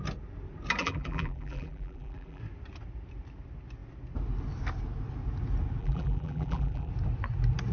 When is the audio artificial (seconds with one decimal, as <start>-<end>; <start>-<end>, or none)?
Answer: 0.8-2.4; 5.8-6.9